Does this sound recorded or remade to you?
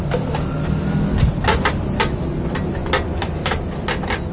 recorded